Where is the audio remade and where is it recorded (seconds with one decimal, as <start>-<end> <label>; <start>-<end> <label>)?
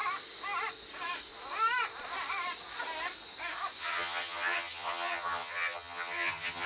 0.0-3.8 recorded; 3.8-6.7 remade